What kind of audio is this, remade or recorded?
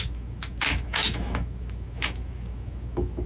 remade